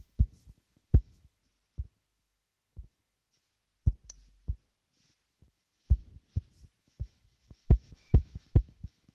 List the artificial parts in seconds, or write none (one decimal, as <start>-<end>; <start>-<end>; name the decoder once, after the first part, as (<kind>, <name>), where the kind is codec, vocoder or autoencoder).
0.0-1.4 (autoencoder, DAC-VAE); 1.9-3.5; 5.3-6.0; 6.8-9.1